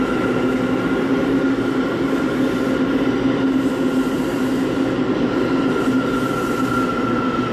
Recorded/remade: recorded